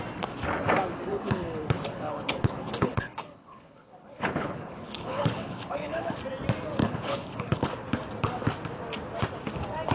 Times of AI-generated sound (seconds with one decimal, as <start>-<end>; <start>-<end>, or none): 1.1-6.2; 6.8-7.7